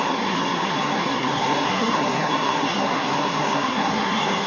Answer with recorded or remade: remade